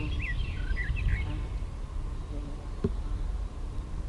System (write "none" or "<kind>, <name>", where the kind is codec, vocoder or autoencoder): none